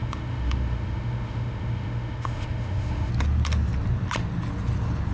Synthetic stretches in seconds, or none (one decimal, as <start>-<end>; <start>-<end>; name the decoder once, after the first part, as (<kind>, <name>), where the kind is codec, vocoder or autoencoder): 0.0-3.1 (autoencoder, DAC-VAE)